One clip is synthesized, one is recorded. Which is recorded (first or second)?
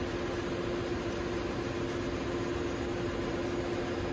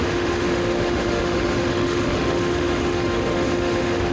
first